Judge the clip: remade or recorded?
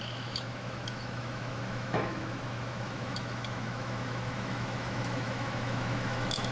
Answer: remade